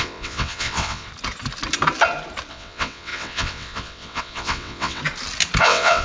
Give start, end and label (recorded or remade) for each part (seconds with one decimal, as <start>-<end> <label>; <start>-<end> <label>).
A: 0.0-1.1 remade; 1.1-2.5 recorded; 2.5-5.0 remade; 5.0-5.6 recorded; 5.6-6.0 remade